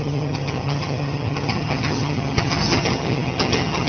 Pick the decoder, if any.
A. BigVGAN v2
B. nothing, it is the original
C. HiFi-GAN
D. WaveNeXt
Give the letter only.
C